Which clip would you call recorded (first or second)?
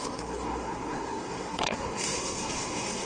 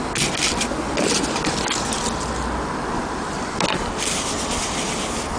second